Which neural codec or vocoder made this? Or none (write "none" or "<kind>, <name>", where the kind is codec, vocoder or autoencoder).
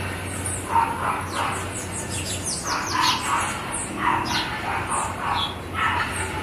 none